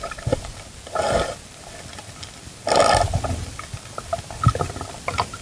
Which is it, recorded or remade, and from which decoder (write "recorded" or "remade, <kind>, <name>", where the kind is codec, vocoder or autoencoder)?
recorded